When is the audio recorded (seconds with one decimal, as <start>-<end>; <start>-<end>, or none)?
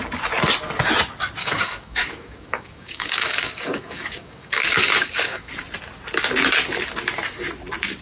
0.0-1.4; 5.5-8.0